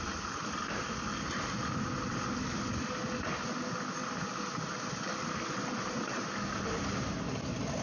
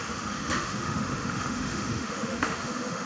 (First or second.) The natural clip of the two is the first